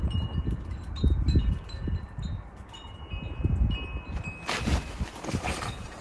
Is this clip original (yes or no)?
yes